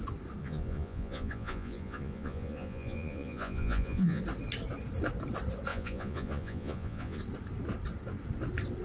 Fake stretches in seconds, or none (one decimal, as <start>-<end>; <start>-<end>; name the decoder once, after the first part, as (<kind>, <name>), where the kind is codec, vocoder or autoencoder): 0.4-4.2 (vocoder, Vocos); 5.7-7.2